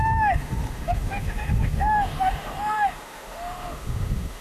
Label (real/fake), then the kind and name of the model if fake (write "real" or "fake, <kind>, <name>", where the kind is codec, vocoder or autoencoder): fake, autoencoder, DAC-VAE